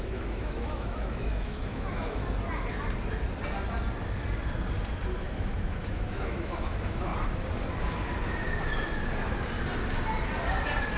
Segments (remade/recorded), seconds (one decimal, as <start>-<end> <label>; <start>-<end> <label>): 0.0-2.2 remade; 2.2-5.2 recorded; 5.2-7.1 remade; 7.1-11.0 recorded